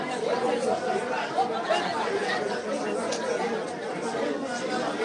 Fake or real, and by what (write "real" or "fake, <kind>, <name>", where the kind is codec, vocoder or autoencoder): real